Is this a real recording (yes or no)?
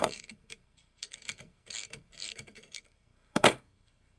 no